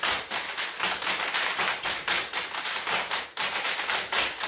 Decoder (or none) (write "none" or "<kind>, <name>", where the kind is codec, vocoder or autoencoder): vocoder, BigVGAN v2